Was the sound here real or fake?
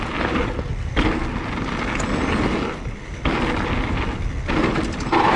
real